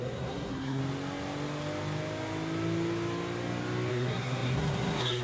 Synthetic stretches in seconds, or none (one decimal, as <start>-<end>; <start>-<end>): 0.0-0.8; 3.9-5.2